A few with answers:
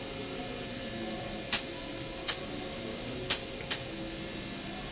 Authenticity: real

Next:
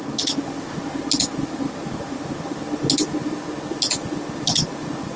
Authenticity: real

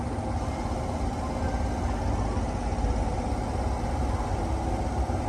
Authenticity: real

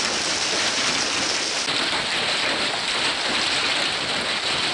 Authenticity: real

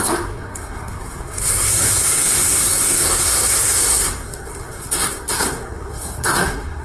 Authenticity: fake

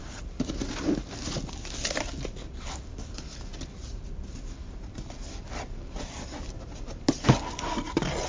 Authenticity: real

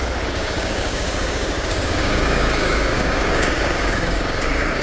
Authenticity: fake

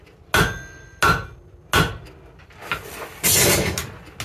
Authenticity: real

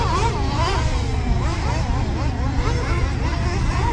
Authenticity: real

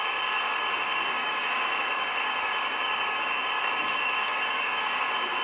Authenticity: fake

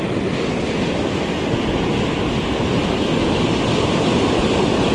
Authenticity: real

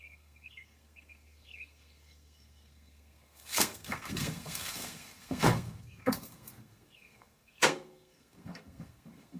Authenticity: fake